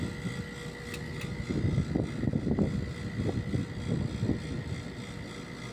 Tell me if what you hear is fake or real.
real